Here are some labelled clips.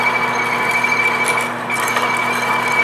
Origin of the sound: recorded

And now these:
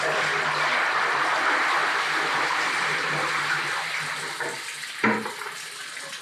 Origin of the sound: recorded